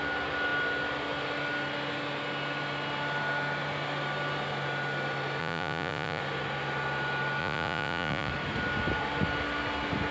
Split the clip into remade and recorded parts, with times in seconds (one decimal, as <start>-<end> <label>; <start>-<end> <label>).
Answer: 0.0-5.4 recorded; 5.4-6.2 remade; 6.2-7.4 recorded; 7.4-8.3 remade; 8.3-10.1 recorded

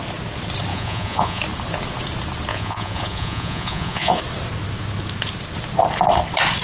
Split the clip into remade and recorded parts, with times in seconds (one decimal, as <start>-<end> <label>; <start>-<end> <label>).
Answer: 0.0-0.7 recorded; 0.7-1.4 remade; 1.4-2.5 recorded; 2.5-4.2 remade; 4.2-6.6 recorded

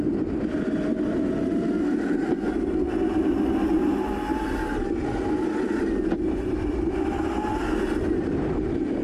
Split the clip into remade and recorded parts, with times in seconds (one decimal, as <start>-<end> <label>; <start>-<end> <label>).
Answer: 0.0-9.0 recorded

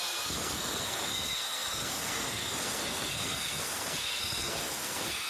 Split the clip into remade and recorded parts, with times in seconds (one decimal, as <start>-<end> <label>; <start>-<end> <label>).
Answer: 0.0-5.3 remade

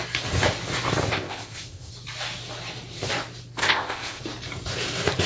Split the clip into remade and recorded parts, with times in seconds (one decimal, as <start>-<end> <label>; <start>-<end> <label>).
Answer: 0.0-1.1 recorded; 1.1-1.9 remade; 1.9-3.6 recorded; 3.6-4.2 remade; 4.2-5.3 recorded

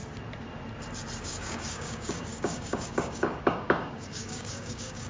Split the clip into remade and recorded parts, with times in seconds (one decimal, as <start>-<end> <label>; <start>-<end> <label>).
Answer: 0.0-1.2 recorded; 1.2-5.1 remade

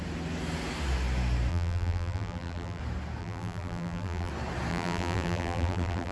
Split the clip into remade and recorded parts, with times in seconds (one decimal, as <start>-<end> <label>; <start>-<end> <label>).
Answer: 0.0-1.5 recorded; 1.5-2.8 remade; 2.8-3.2 recorded; 3.2-4.3 remade; 4.3-4.7 recorded; 4.7-6.1 remade